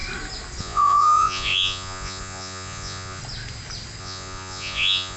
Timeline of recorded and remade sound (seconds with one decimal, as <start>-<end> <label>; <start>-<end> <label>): 0.0-0.6 recorded; 0.6-3.2 remade; 3.2-4.0 recorded; 4.0-5.2 remade

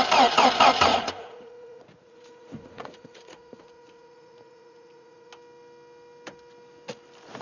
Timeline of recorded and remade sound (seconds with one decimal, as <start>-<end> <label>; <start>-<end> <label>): 0.0-0.9 recorded; 0.9-5.3 remade; 5.3-7.4 recorded